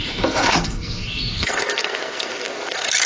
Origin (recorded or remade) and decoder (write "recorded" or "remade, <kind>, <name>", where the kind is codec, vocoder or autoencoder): remade, codec, SNAC